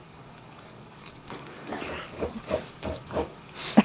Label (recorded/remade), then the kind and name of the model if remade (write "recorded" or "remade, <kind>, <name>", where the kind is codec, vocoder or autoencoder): remade, codec, DAC